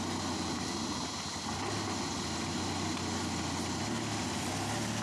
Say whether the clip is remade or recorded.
recorded